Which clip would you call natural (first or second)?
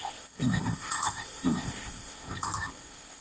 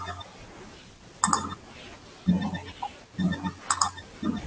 second